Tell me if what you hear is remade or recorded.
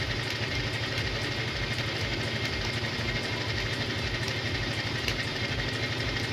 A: recorded